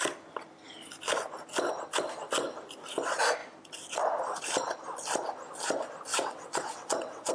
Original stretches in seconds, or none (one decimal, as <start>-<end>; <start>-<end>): 0.0-6.1